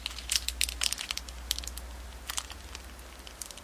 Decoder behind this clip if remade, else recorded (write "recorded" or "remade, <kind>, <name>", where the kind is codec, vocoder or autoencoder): recorded